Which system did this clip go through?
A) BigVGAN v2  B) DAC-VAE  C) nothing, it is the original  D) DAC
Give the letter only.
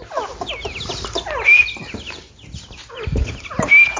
C